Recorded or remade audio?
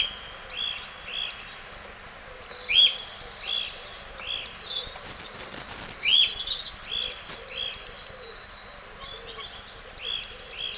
recorded